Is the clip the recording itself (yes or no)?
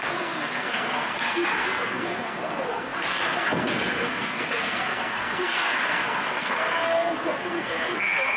no